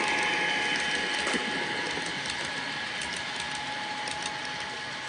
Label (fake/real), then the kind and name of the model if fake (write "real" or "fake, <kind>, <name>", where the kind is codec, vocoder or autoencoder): real